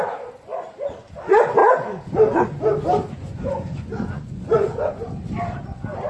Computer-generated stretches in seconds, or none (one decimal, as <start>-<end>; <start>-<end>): 3.2-5.0

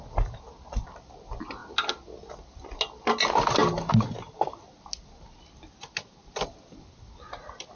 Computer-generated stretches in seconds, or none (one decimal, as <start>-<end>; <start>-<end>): none

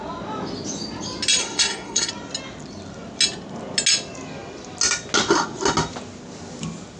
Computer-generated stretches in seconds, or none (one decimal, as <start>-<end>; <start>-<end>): 1.4-2.1

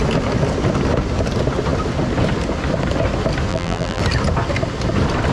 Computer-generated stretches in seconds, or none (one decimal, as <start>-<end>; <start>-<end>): 3.5-4.0

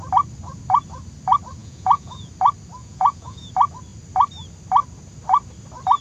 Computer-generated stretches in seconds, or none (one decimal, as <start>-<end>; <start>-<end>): 1.6-2.3; 2.8-3.5